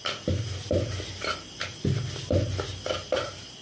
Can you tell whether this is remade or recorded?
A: recorded